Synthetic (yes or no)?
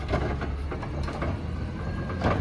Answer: no